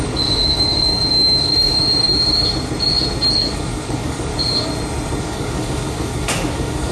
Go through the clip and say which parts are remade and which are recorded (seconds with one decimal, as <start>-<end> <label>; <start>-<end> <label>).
0.0-2.1 remade; 2.1-3.3 recorded; 3.3-4.3 remade; 4.3-5.2 recorded; 5.2-6.9 remade